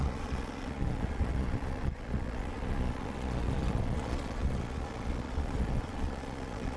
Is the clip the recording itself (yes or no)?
no